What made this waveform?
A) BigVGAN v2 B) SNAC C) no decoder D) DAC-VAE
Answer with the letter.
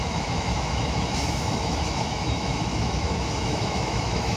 D